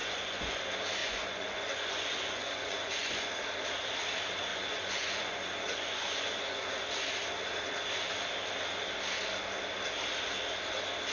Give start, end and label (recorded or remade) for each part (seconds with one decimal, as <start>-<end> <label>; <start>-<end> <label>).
0.0-0.6 remade; 0.6-1.0 recorded; 1.0-3.3 remade; 3.3-4.5 recorded; 4.5-6.7 remade; 6.7-11.1 recorded